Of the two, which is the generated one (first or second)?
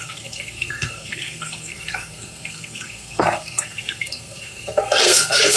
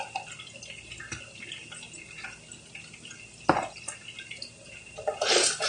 first